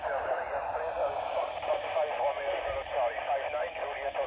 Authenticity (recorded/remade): recorded